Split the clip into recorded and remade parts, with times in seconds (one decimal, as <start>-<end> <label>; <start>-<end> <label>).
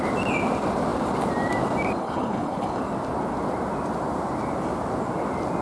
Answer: 0.0-2.0 recorded; 2.0-2.8 remade; 2.8-5.6 recorded